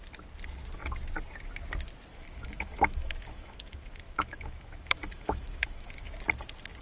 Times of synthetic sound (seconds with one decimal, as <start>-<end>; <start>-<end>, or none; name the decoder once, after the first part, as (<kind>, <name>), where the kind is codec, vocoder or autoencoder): 2.1-6.2 (autoencoder, DAC-VAE)